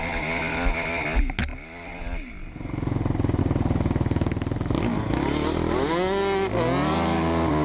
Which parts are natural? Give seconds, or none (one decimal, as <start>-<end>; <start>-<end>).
0.0-7.6